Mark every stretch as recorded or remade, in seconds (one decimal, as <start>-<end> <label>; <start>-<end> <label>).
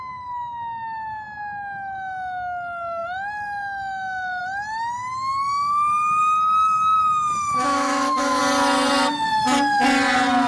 0.0-6.2 recorded; 6.2-8.4 remade; 8.4-10.5 recorded